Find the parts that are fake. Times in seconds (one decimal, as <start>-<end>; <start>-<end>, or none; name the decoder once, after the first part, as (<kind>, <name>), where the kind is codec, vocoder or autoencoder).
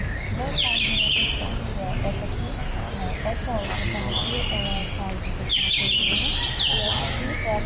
none